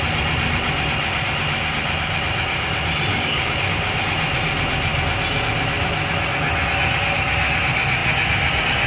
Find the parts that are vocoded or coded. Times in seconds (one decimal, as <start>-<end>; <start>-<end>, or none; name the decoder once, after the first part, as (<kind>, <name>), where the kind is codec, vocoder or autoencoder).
3.1-3.7 (codec, DAC)